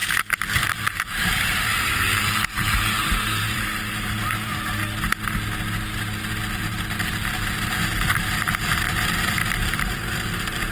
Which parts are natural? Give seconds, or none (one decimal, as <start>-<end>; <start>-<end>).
0.0-0.6; 4.8-6.6